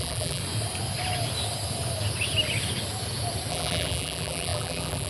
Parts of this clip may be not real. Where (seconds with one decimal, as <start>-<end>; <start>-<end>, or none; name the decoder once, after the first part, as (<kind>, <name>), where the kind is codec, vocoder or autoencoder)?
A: 0.0-0.4 (vocoder, BigVGAN v2); 3.5-5.1